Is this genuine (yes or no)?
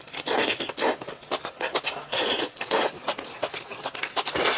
yes